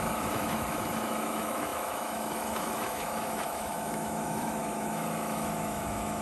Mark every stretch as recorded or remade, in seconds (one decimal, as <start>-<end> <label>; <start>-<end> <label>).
0.0-6.2 remade